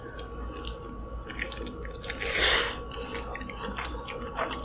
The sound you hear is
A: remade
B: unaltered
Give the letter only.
B